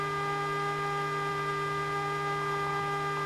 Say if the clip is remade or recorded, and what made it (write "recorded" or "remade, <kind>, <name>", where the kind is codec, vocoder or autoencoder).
recorded